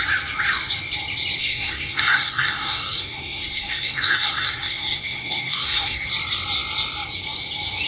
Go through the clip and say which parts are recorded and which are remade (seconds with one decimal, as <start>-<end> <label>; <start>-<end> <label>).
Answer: 0.0-1.4 recorded; 1.4-6.1 remade; 6.1-7.9 recorded